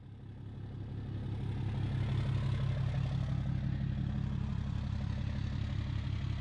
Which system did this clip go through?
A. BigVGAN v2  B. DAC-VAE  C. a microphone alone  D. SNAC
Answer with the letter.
C